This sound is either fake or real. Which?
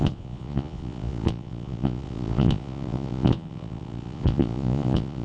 fake